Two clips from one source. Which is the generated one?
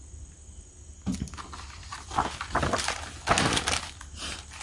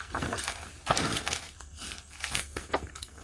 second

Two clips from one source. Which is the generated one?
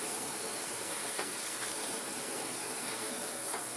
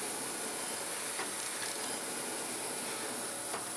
first